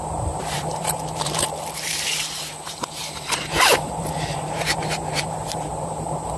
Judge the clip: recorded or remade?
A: remade